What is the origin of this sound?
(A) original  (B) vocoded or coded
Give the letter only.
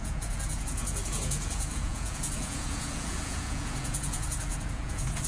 B